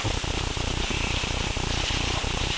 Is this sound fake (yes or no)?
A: yes